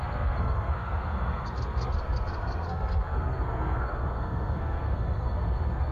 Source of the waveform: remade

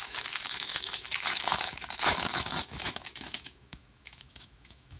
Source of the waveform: remade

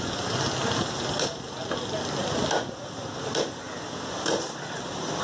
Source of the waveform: recorded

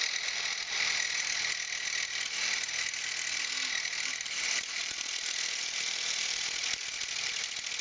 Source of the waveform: recorded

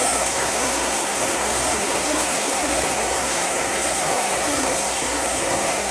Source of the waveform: remade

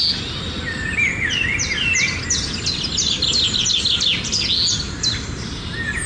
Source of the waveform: recorded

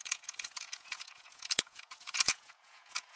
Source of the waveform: remade